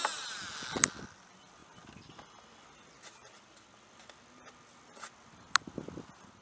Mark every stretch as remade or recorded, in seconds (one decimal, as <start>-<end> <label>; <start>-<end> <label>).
0.0-6.4 recorded

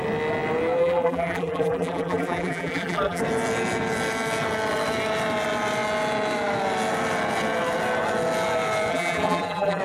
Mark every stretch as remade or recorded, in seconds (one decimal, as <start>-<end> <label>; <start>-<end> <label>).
0.0-0.8 recorded; 0.8-3.2 remade; 3.2-8.9 recorded; 8.9-9.8 remade

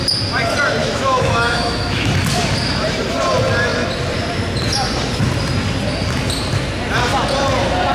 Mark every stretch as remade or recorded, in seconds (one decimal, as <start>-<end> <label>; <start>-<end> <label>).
0.0-0.8 recorded; 0.8-2.1 remade; 2.1-7.9 recorded

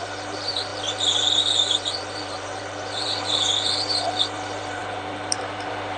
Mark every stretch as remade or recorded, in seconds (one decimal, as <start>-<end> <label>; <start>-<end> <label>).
0.0-6.0 remade

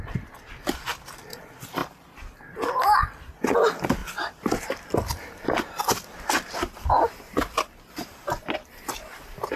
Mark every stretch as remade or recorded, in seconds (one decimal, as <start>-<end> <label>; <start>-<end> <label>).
0.0-4.0 recorded; 4.0-9.2 remade; 9.2-9.6 recorded